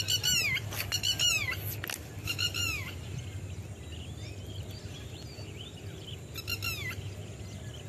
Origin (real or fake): real